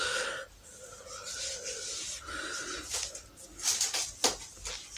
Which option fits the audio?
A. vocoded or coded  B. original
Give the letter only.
B